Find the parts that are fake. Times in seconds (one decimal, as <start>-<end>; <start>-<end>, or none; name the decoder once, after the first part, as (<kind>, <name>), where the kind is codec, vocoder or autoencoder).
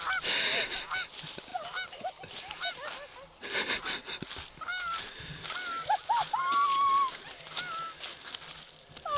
none